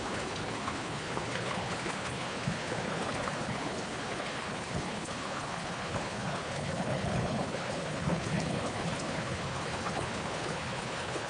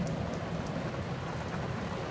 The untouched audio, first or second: second